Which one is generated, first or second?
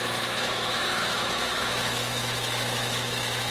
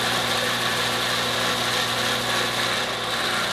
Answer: first